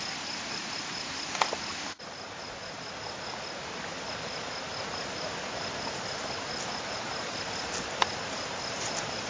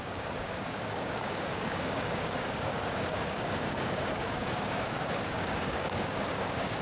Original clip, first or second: first